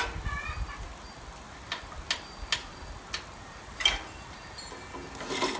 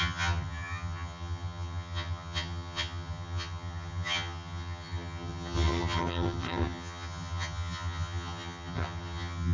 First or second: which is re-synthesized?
second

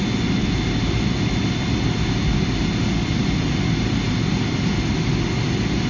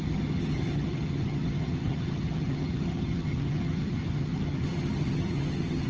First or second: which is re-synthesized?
second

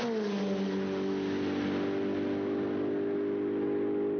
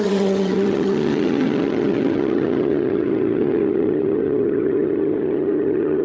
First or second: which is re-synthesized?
second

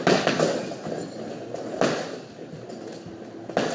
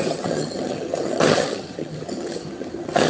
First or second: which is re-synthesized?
second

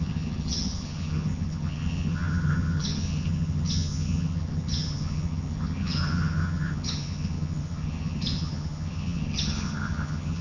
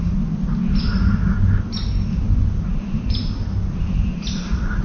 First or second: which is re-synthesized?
first